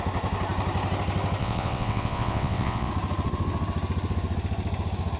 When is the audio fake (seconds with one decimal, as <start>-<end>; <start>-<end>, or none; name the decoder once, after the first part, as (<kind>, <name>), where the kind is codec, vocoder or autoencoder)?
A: 1.4-2.9 (vocoder, WaveNeXt)